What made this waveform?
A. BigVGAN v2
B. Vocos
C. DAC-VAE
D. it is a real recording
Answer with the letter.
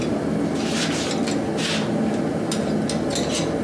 D